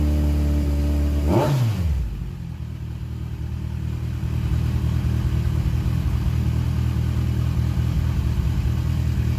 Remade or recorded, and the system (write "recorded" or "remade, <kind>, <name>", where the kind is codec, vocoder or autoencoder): recorded